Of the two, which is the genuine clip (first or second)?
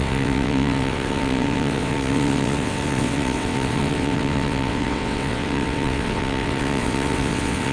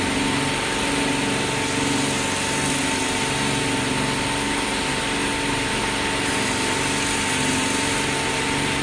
second